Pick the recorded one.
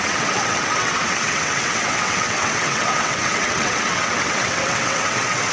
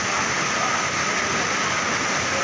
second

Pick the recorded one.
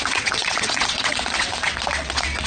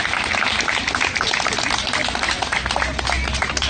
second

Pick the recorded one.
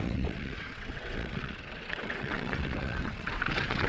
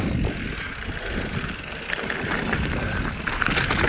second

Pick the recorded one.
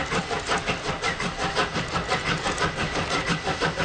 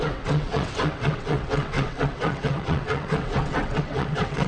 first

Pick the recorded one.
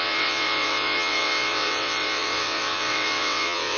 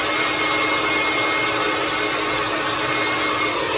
second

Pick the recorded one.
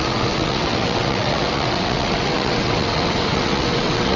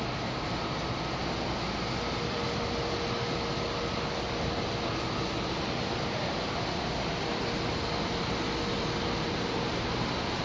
second